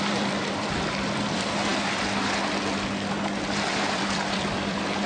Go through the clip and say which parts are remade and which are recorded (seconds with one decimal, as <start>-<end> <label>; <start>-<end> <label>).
0.0-1.7 remade; 1.7-3.7 recorded; 3.7-5.1 remade